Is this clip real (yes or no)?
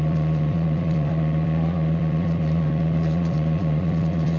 no